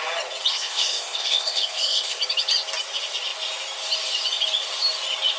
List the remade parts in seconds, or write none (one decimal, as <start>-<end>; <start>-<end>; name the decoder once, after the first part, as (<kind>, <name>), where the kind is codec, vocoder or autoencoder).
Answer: 0.5-2.2 (codec, ZipCodec)